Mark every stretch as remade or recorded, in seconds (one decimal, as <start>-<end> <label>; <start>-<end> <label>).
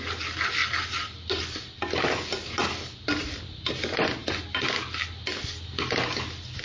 0.0-6.6 recorded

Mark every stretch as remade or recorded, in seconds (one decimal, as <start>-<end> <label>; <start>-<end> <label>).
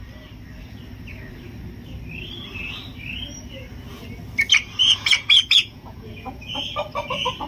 0.0-4.8 recorded; 4.8-6.4 remade; 6.4-7.5 recorded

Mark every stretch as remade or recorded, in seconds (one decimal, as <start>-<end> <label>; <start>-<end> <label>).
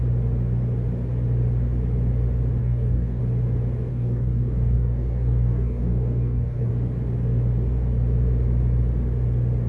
0.0-2.6 recorded; 2.6-3.2 remade; 3.2-3.9 recorded; 3.9-6.7 remade; 6.7-9.7 recorded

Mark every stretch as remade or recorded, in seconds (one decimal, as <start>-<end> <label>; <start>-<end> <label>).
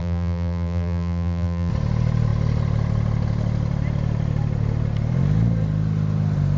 0.0-1.7 remade; 1.7-6.6 recorded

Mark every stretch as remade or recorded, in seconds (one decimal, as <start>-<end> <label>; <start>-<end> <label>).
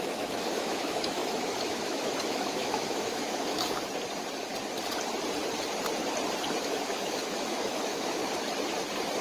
0.0-3.8 remade; 3.8-6.6 recorded; 6.6-8.2 remade; 8.2-9.2 recorded